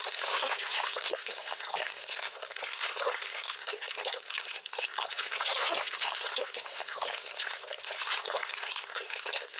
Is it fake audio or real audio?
fake